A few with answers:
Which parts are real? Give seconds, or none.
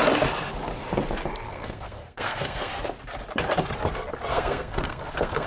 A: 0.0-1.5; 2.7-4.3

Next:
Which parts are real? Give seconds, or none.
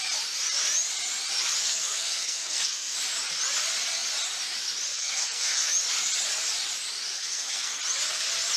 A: 0.0-1.6; 3.0-4.9; 5.7-7.1; 7.8-8.6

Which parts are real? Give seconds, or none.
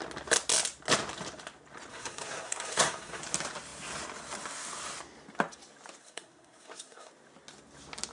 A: 0.0-1.9; 3.2-6.0; 7.1-8.1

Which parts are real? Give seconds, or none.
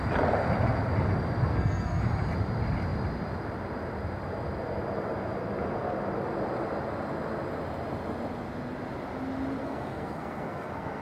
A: 0.0-1.5; 2.0-9.6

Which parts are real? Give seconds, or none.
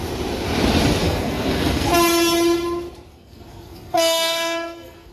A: 0.0-1.0; 1.9-3.1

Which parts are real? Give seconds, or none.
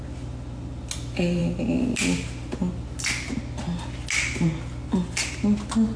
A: 0.0-6.0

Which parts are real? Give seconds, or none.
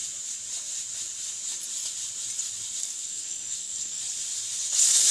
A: 0.0-2.8; 4.0-5.1